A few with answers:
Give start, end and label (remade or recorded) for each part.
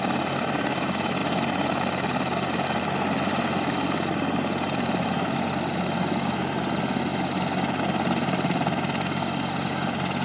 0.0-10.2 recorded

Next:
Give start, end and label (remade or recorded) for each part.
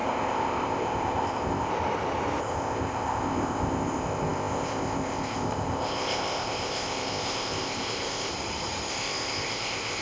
0.0-1.7 remade; 1.7-2.4 recorded; 2.4-8.3 remade; 8.3-8.9 recorded; 8.9-10.0 remade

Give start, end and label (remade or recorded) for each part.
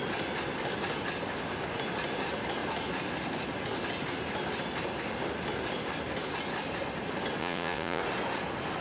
0.0-7.4 recorded; 7.4-8.0 remade; 8.0-8.8 recorded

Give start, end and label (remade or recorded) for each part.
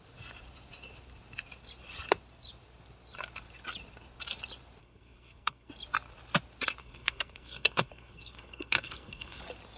0.0-4.8 recorded; 4.8-5.7 remade; 5.7-6.8 recorded; 6.8-9.4 remade; 9.4-9.8 recorded